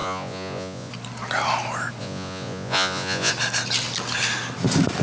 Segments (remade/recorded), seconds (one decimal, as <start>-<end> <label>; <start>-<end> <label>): 0.0-0.9 remade; 0.9-2.0 recorded; 2.0-3.3 remade; 3.3-5.0 recorded